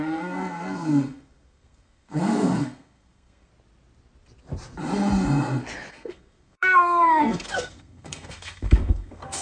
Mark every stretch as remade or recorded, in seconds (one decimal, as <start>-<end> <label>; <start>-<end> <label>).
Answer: 0.0-3.5 remade; 3.5-5.9 recorded; 5.9-9.4 remade